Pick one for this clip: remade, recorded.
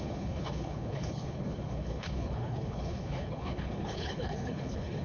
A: remade